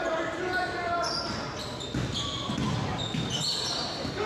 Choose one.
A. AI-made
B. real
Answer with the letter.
B